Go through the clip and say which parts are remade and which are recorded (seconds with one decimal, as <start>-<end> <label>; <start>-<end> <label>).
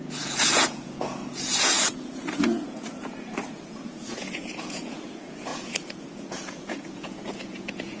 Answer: 0.0-8.0 remade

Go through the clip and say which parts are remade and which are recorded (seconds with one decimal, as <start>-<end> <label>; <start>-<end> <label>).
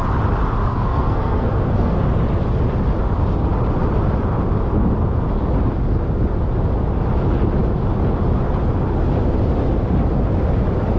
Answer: 0.0-0.6 recorded; 0.6-2.0 remade; 2.0-11.0 recorded